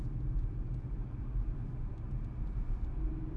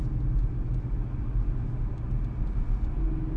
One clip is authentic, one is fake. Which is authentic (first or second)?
second